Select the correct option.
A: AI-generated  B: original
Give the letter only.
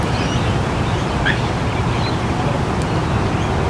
B